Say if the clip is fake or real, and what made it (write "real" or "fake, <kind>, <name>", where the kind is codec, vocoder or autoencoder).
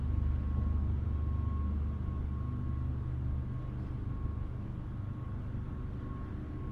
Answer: real